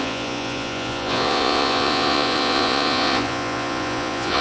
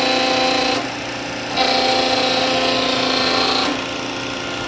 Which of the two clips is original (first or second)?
second